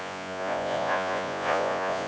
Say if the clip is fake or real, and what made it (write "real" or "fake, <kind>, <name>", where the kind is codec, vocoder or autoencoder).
fake, vocoder, Vocos